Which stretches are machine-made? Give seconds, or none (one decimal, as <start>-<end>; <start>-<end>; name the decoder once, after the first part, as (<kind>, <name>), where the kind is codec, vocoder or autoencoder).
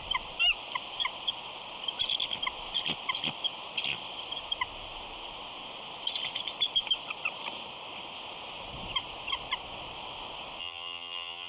10.6-11.5 (vocoder, HiFi-GAN)